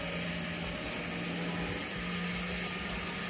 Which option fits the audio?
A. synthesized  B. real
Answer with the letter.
B